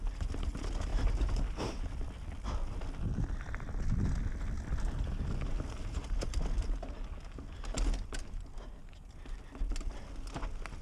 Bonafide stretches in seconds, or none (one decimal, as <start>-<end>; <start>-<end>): 0.0-0.9; 1.6-10.8